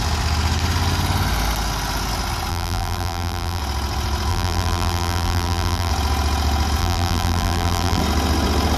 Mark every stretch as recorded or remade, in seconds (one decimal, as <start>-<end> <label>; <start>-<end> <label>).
0.0-2.5 recorded; 2.5-3.6 remade; 3.6-4.3 recorded; 4.3-5.9 remade; 5.9-6.8 recorded; 6.8-8.0 remade; 8.0-8.8 recorded